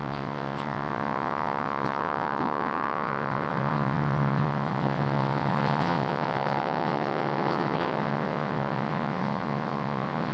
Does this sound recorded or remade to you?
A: remade